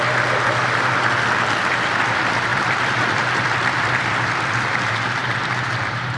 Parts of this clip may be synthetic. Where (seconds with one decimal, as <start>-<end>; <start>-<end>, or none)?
2.5-4.5